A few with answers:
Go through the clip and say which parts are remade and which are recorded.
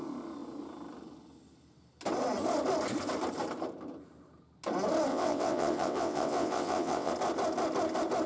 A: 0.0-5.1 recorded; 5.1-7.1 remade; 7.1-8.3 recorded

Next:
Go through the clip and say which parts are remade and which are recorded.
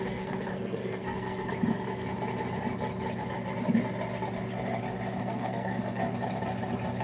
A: 0.0-1.5 remade; 1.5-5.2 recorded; 5.2-6.0 remade; 6.0-7.0 recorded